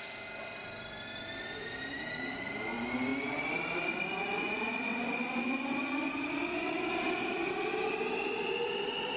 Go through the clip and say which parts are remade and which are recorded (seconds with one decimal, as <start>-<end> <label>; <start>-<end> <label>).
0.0-9.2 recorded